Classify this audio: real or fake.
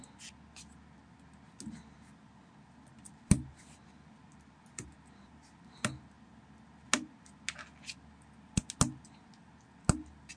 real